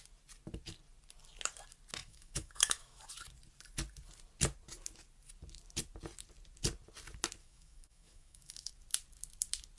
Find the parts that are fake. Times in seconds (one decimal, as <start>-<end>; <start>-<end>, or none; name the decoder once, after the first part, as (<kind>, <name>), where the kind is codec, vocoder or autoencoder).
2.0-3.0 (autoencoder, DAC-VAE); 7.4-8.7